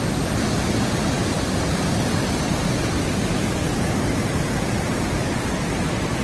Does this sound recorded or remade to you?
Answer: recorded